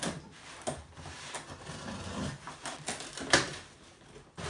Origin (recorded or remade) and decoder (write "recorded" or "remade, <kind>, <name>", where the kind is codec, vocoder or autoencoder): recorded